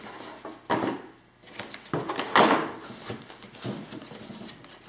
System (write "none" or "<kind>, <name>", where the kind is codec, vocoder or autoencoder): none